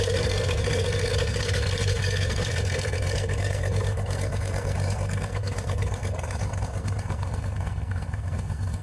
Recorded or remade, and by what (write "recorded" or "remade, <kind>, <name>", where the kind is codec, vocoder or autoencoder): remade, codec, SNAC